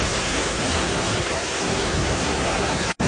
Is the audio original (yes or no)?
no